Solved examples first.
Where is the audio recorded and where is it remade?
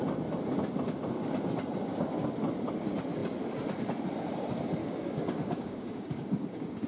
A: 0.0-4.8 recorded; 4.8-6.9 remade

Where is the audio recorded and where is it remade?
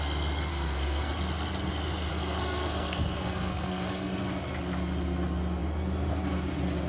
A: 0.0-0.5 recorded; 0.5-1.1 remade; 1.1-2.1 recorded; 2.1-4.2 remade; 4.2-6.9 recorded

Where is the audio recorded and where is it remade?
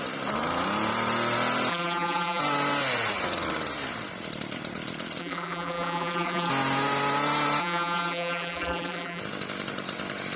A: 0.0-1.7 recorded; 1.7-2.4 remade; 2.4-5.2 recorded; 5.2-6.5 remade; 6.5-7.6 recorded; 7.6-9.2 remade; 9.2-10.4 recorded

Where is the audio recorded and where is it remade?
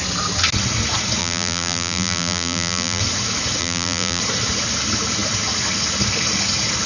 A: 0.0-1.2 recorded; 1.2-3.0 remade; 3.0-3.6 recorded; 3.6-4.2 remade; 4.2-6.9 recorded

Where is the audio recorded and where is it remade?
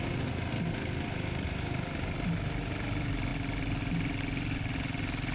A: 0.0-5.3 recorded